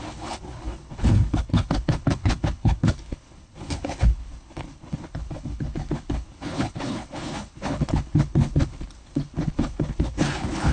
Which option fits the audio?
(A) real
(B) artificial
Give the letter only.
B